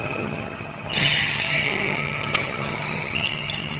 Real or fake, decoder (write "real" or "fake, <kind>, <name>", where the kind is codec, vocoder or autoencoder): fake, vocoder, HiFi-GAN